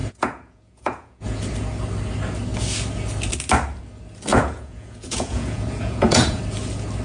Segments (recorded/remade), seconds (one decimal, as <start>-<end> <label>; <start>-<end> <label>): 0.0-1.4 remade; 1.4-4.3 recorded; 4.3-6.4 remade; 6.4-7.0 recorded